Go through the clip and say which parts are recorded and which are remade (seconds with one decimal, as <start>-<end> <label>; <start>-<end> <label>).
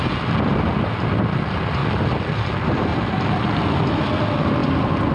0.0-1.8 recorded; 1.8-2.5 remade; 2.5-2.9 recorded; 2.9-3.5 remade; 3.5-4.6 recorded; 4.6-5.1 remade